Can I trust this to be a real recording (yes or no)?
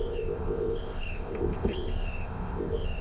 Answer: no